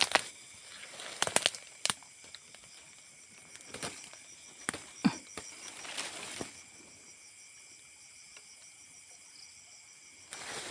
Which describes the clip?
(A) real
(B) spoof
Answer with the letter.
A